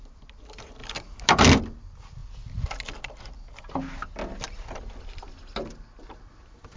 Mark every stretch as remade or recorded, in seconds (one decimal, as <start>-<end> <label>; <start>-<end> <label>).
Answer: 0.0-6.8 recorded

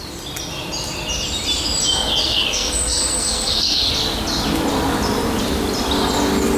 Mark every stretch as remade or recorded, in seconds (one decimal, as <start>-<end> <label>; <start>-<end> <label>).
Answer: 0.0-2.2 recorded; 2.2-3.9 remade; 3.9-6.6 recorded

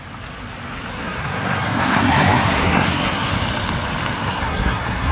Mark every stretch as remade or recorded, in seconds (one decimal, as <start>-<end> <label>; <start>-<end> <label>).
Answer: 0.0-0.9 recorded; 0.9-3.3 remade; 3.3-4.2 recorded; 4.2-5.1 remade